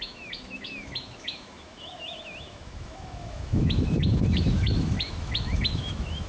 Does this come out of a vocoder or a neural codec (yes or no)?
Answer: yes